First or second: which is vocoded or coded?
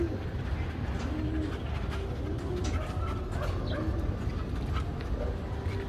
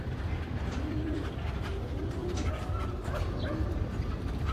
second